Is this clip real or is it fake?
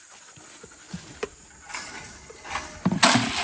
real